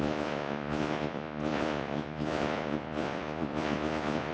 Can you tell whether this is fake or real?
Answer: fake